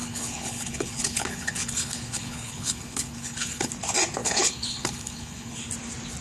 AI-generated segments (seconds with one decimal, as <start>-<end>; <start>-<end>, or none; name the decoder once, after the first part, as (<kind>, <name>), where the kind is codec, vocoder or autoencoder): 0.0-3.7 (codec, HILCodec); 4.2-5.7